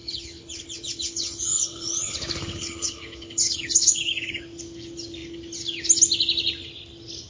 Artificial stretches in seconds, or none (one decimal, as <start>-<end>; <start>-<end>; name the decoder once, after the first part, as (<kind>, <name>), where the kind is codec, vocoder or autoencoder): 0.0-4.4 (codec, HILCodec)